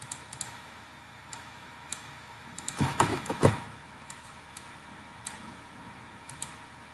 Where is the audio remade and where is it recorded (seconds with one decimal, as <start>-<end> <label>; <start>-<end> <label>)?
0.0-6.9 remade